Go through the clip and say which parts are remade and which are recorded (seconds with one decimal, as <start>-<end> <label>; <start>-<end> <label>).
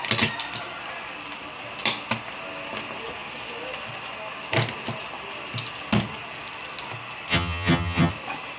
0.0-7.3 recorded; 7.3-8.1 remade; 8.1-8.6 recorded